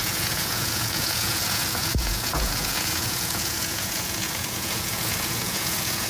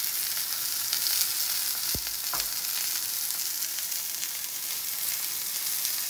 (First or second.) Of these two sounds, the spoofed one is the first